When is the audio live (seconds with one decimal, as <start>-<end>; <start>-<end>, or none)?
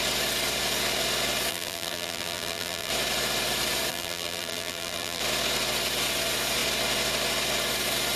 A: 0.0-1.5; 2.9-3.9; 5.2-8.2